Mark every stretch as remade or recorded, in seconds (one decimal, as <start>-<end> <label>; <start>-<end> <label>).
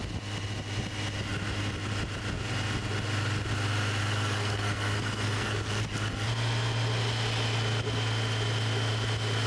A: 0.0-4.0 recorded; 4.0-5.8 remade; 5.8-9.5 recorded